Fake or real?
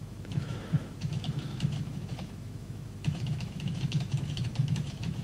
fake